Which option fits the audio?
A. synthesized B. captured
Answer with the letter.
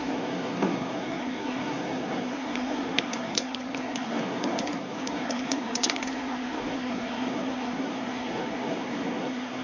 A